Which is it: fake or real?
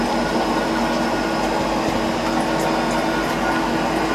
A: real